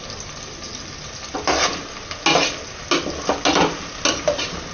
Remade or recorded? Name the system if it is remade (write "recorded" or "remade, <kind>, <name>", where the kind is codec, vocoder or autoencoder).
recorded